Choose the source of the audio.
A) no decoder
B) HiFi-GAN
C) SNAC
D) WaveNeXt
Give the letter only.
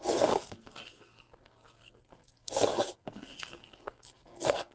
C